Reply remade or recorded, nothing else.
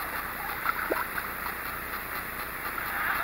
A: recorded